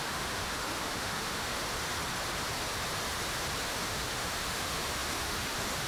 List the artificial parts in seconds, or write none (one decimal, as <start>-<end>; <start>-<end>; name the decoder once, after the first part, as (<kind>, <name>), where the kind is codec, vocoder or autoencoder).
0.0-1.6 (autoencoder, DAC-VAE); 3.7-5.9

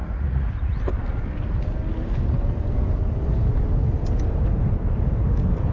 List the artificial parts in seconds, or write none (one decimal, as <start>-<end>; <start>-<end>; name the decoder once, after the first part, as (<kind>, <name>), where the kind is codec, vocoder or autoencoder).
0.0-0.8 (vocoder, Vocos)

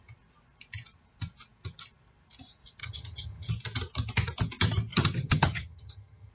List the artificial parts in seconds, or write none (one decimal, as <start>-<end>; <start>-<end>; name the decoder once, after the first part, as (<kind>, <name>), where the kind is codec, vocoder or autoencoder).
2.8-3.5 (vocoder, HiFi-GAN); 4.9-6.3

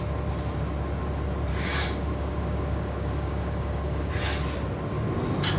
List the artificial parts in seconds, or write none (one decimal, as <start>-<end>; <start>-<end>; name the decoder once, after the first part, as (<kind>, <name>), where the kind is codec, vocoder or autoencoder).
1.5-4.1 (codec, DAC)

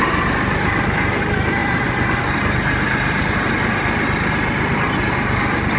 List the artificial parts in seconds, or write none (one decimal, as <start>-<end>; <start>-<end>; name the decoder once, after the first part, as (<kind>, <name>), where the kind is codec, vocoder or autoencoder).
none